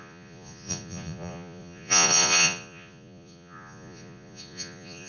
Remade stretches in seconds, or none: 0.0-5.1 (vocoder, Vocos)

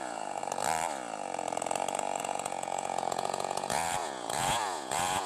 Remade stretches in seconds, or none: 0.0-0.4 (vocoder, Vocos); 2.2-5.3